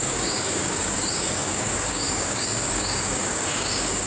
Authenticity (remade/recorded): remade